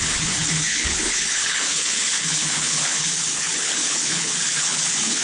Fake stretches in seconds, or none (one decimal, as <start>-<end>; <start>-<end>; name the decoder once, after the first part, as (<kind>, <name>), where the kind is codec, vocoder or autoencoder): 0.0-5.2 (codec, HILCodec)

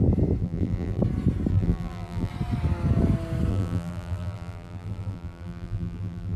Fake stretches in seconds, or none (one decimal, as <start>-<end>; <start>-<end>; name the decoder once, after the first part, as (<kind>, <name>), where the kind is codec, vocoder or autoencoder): 0.4-1.0 (vocoder, BigVGAN v2); 1.5-2.3; 3.5-6.4

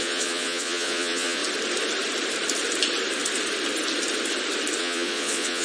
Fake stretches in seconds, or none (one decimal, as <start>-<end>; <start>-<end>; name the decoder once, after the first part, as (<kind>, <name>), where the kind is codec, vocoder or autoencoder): 0.0-1.4 (vocoder, Vocos); 4.8-5.6

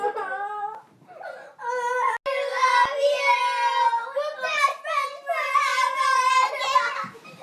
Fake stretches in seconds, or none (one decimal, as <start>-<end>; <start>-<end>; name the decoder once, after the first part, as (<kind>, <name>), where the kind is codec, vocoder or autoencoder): 2.5-3.4 (vocoder, BigVGAN v2); 5.7-6.3